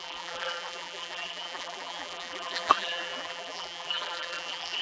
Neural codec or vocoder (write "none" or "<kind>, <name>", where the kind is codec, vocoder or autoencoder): vocoder, BigVGAN v2